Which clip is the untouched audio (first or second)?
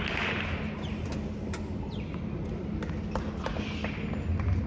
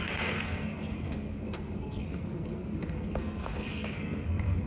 first